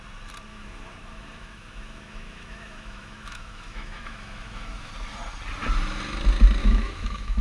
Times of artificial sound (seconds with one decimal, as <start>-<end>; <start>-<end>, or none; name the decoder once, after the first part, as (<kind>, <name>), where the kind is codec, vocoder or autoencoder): 0.5-4.9 (autoencoder, DAC-VAE); 6.6-7.4